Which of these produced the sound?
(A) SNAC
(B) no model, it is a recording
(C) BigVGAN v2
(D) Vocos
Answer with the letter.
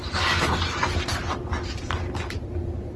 B